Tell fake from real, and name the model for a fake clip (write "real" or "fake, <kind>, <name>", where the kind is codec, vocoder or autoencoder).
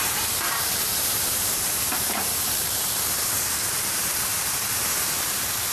fake, vocoder, BigVGAN v2